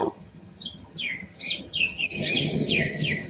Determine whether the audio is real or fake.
fake